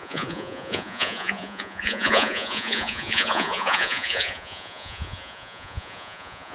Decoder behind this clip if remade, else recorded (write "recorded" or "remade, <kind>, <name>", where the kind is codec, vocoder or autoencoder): remade, vocoder, Vocos